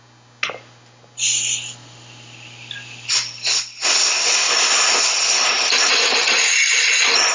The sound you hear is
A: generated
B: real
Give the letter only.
B